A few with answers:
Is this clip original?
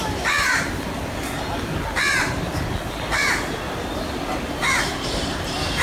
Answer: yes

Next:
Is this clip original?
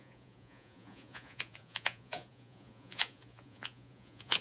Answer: no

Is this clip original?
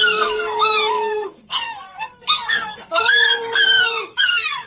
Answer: no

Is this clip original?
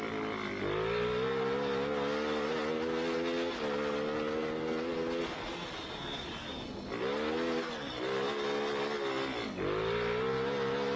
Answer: yes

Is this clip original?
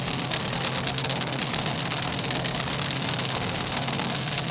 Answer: no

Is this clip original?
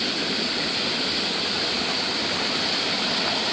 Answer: yes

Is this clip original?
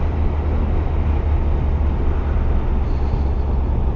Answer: yes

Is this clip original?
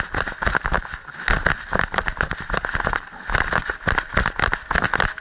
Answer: yes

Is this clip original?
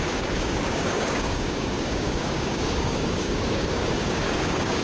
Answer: no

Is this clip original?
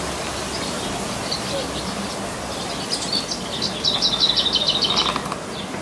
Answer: yes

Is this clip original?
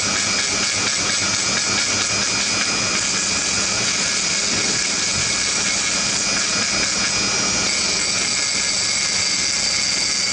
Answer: yes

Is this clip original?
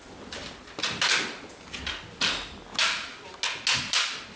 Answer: yes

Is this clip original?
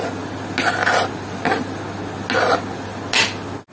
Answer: yes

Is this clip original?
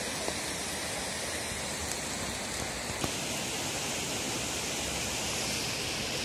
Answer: yes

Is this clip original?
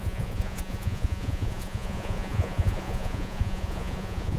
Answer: no